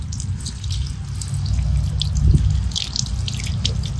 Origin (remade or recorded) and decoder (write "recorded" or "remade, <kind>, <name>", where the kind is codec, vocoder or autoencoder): recorded